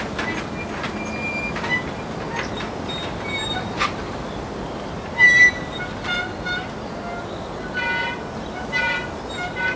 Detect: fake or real real